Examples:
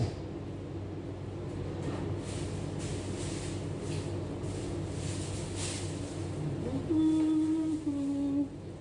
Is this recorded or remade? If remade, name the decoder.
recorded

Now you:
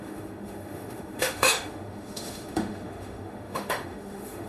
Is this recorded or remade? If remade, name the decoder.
remade, autoencoder, DAC-VAE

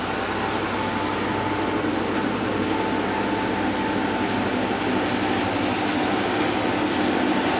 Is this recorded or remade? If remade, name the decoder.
recorded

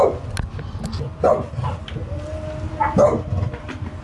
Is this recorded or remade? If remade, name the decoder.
recorded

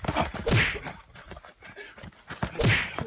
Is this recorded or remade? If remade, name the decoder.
recorded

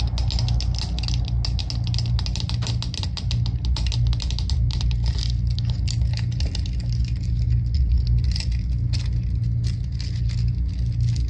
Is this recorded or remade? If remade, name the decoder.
recorded